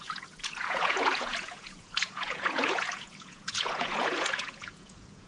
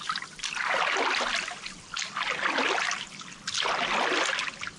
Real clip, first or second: second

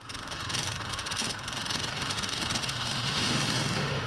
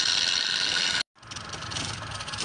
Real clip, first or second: second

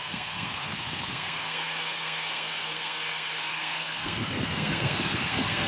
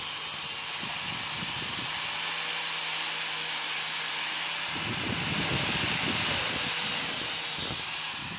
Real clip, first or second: second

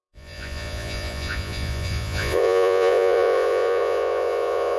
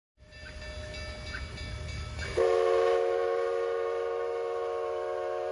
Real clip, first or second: second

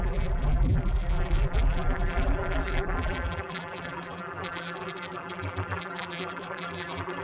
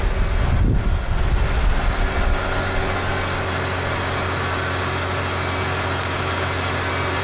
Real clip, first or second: second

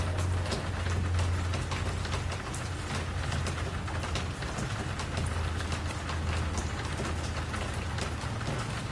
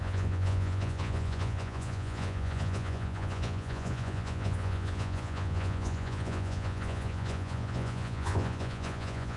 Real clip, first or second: first